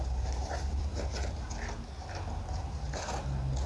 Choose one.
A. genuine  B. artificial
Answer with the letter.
A